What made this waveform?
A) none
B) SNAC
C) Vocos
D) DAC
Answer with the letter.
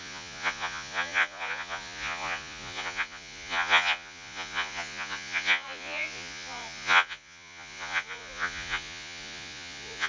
C